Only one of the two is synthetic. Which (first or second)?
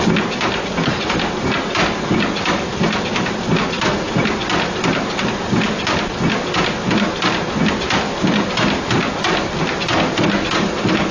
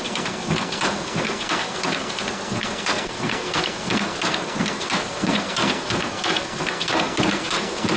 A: second